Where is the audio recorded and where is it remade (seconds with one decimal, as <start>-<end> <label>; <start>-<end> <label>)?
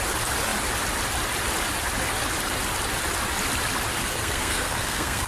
0.0-4.0 recorded; 4.0-5.3 remade